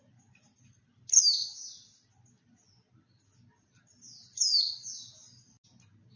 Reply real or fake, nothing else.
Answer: real